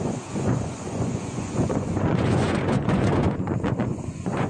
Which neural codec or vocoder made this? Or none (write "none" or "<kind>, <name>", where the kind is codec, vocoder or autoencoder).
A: vocoder, Vocos